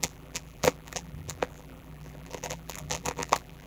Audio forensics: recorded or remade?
remade